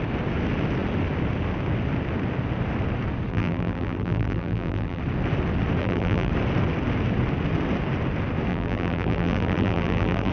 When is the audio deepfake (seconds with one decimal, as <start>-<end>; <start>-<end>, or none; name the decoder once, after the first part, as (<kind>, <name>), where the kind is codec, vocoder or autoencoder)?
3.3-5.0 (vocoder, BigVGAN v2); 5.8-6.3; 8.5-10.3

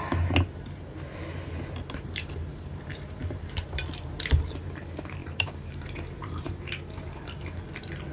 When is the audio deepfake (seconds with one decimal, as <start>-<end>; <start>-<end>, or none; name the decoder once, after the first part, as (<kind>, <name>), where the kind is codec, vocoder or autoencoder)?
2.5-3.7 (vocoder, BigVGAN v2); 5.2-6.5

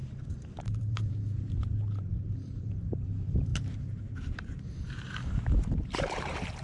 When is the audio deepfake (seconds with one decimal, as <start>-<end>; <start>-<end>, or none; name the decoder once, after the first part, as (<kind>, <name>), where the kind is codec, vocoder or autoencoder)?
0.0-6.6 (vocoder, BigVGAN v2)

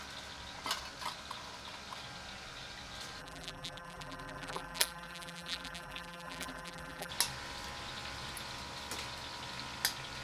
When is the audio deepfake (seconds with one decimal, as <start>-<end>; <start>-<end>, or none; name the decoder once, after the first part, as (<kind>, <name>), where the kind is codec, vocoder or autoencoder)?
3.2-7.1 (vocoder, BigVGAN v2)